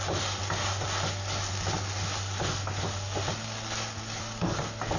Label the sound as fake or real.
real